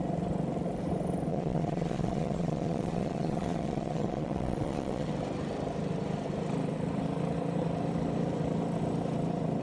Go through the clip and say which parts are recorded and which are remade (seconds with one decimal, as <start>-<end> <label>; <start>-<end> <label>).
0.0-1.3 recorded; 1.3-5.1 remade; 5.1-9.6 recorded